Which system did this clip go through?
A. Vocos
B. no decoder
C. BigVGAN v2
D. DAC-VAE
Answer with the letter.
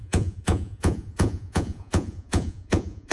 A